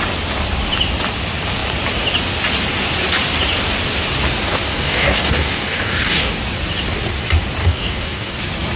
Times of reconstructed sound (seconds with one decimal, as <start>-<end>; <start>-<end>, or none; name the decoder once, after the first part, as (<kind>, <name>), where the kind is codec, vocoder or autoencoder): 4.7-6.3 (codec, DAC); 7.6-8.3

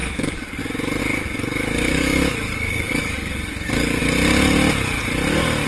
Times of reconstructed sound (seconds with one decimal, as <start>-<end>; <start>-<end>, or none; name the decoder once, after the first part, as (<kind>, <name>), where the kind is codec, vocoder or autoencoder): 0.0-0.6 (codec, DAC); 1.0-4.0

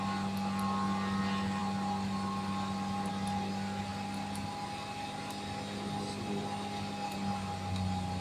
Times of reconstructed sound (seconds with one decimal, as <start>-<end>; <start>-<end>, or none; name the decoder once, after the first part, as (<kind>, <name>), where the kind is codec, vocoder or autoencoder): none

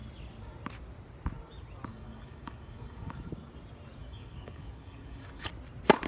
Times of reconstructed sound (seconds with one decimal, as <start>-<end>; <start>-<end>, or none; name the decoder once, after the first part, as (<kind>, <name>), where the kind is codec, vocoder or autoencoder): 1.9-3.3 (codec, DAC); 4.0-5.5

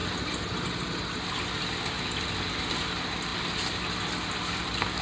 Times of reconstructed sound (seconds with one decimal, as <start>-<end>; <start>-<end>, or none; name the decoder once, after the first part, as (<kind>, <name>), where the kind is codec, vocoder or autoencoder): none